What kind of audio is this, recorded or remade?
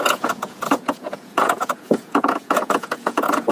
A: remade